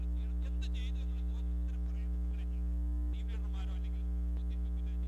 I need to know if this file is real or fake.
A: real